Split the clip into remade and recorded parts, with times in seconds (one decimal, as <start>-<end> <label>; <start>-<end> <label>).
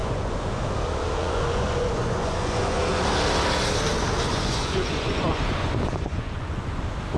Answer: 0.0-0.6 remade; 0.6-1.2 recorded; 1.2-3.0 remade; 3.0-4.3 recorded; 4.3-6.8 remade; 6.8-7.2 recorded